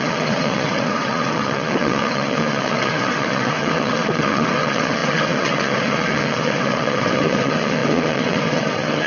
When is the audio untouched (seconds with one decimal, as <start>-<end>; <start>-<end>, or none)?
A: none